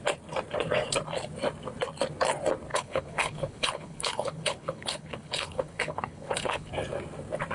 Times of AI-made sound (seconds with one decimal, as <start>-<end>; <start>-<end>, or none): 2.7-6.7